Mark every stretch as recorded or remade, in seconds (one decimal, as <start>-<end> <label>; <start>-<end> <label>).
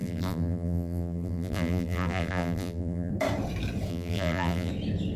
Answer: 0.0-3.1 remade; 3.1-3.9 recorded; 3.9-4.7 remade; 4.7-5.2 recorded